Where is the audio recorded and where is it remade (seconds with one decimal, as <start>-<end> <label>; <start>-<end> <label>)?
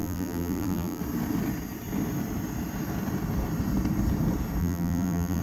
0.0-1.0 remade; 1.0-4.6 recorded; 4.6-5.4 remade